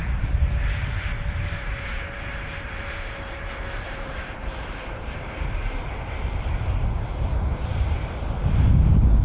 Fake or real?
fake